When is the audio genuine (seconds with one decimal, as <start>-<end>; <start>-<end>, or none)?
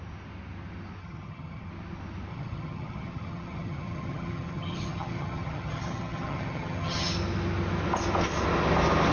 0.0-1.0; 1.7-2.3; 7.1-9.1